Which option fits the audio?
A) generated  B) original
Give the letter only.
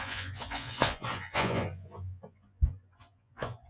A